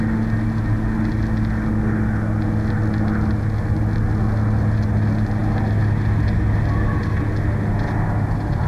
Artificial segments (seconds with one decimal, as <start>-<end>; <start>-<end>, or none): none